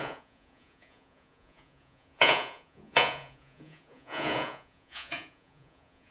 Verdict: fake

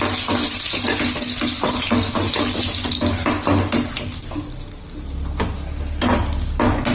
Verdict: real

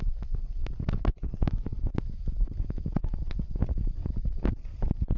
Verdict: real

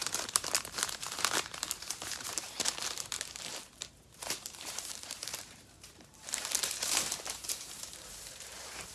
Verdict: fake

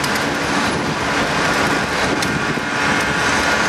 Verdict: real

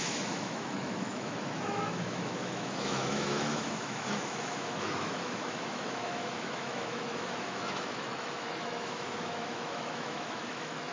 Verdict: fake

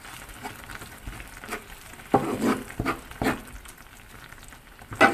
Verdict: real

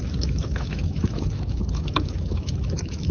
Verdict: fake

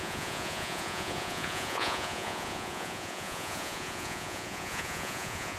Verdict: fake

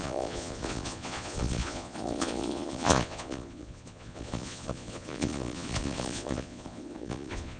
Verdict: fake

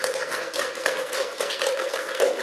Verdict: fake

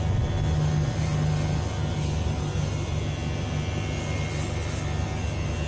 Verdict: real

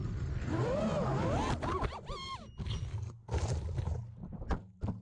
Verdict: real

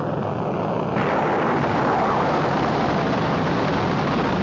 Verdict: real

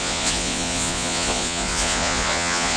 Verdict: fake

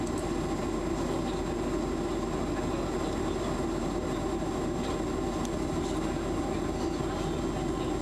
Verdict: real